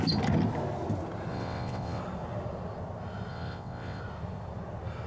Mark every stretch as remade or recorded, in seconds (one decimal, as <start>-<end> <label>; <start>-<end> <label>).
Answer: 0.0-1.3 recorded; 1.3-2.0 remade; 2.0-3.3 recorded; 3.3-4.0 remade; 4.0-5.1 recorded